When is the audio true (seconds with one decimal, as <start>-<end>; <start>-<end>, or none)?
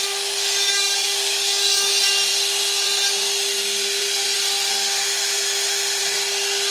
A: 0.0-0.7; 1.9-6.7